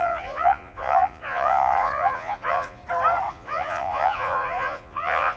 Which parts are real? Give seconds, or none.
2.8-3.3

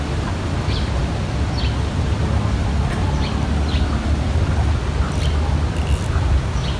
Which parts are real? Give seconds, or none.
0.0-6.8